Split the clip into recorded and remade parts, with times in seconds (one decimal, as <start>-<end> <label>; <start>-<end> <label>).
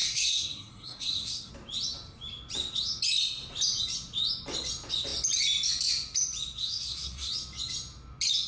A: 0.0-1.5 remade; 1.5-6.6 recorded; 6.6-7.3 remade; 7.3-8.5 recorded